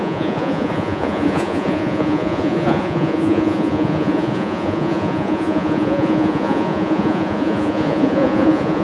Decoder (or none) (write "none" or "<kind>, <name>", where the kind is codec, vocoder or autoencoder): vocoder, Vocos